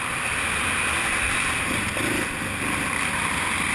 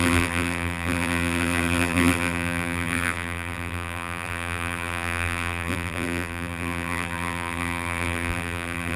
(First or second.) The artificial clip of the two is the second